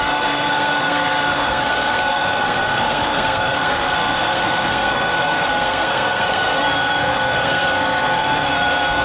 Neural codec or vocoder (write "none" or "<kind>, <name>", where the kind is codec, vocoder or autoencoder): codec, SNAC